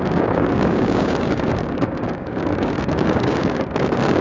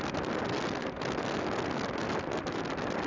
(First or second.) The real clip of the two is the second